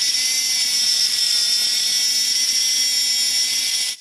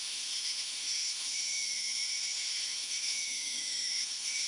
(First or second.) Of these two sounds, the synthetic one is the second